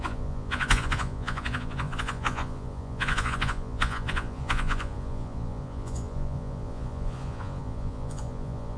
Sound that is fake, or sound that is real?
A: fake